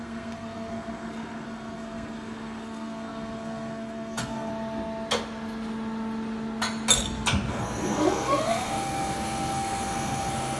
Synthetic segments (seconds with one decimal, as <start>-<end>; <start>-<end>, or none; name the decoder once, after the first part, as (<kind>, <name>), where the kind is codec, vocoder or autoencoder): 0.0-4.5 (codec, SNAC); 7.5-10.6